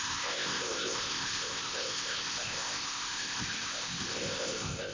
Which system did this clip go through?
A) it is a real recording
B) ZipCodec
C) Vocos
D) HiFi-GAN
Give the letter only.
B